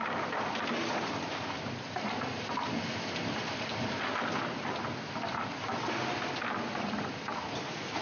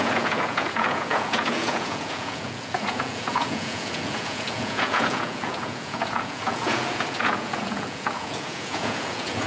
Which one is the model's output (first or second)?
second